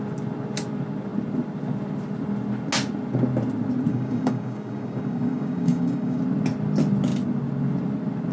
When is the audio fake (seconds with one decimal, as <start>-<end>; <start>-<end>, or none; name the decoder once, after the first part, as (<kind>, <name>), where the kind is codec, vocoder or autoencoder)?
3.9-6.2 (codec, DAC)